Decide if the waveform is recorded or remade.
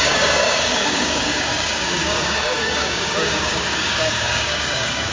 remade